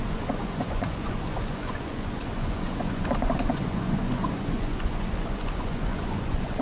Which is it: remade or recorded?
remade